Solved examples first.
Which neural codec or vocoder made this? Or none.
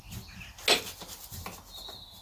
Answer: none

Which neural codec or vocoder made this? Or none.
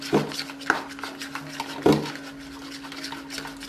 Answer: none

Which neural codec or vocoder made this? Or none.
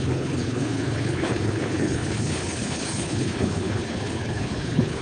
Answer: codec, HILCodec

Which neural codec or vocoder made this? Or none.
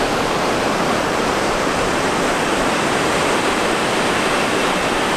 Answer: vocoder, BigVGAN v2